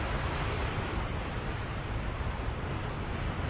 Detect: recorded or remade recorded